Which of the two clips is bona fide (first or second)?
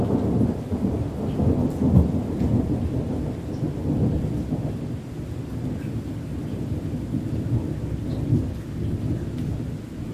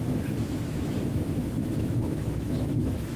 first